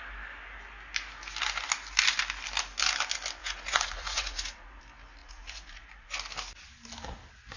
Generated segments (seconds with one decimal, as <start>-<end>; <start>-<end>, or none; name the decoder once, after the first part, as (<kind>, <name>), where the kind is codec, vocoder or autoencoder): 3.4-4.8 (vocoder, Vocos); 5.2-6.1